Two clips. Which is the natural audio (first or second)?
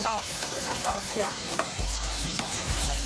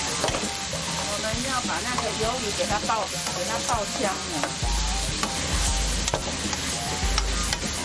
second